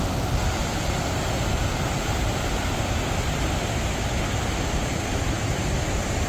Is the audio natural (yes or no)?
yes